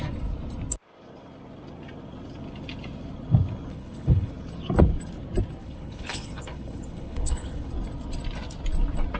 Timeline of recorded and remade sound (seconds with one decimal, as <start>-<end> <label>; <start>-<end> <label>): 0.0-3.7 recorded; 3.7-4.3 remade; 4.3-5.6 recorded; 5.6-7.7 remade; 7.7-9.2 recorded